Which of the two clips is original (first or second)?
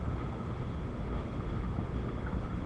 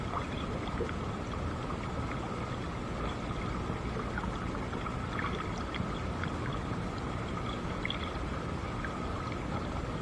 second